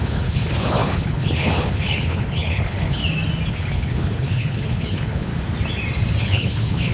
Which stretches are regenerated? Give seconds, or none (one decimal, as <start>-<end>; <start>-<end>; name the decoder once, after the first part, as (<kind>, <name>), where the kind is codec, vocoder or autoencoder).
0.0-3.0 (codec, HILCodec); 3.5-5.3; 6.2-6.9